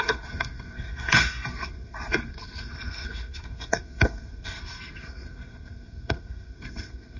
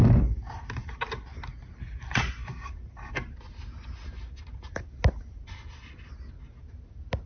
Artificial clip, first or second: first